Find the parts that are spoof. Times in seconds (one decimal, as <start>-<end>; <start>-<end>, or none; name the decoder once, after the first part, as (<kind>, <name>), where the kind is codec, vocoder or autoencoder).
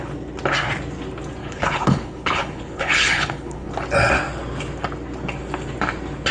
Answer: 1.4-3.7 (codec, HILCodec)